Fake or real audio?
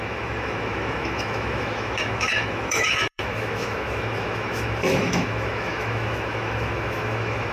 fake